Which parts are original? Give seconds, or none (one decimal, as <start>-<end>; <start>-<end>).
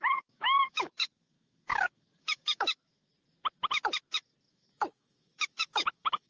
3.1-4.5